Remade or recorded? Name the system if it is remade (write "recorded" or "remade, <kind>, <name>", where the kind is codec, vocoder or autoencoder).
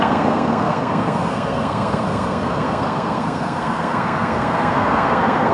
remade, codec, SNAC